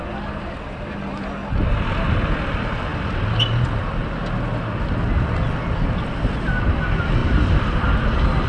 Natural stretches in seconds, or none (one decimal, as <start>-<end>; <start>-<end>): 0.0-8.5